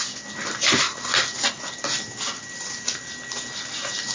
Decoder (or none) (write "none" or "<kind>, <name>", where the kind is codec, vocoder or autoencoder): none